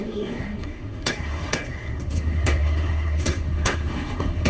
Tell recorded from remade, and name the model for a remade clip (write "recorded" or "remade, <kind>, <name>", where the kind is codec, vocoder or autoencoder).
remade, codec, SNAC